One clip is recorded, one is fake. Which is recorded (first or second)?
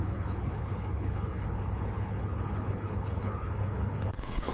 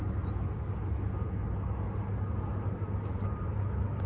second